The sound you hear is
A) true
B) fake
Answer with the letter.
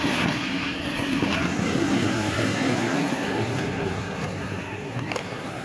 B